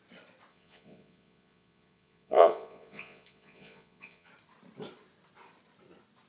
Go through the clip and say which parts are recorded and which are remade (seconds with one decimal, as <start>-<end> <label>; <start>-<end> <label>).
0.0-0.5 recorded; 0.5-4.3 remade; 4.3-6.3 recorded